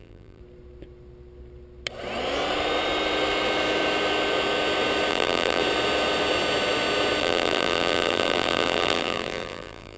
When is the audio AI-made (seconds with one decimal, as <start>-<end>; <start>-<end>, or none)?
0.0-0.4; 5.1-5.6; 7.2-10.0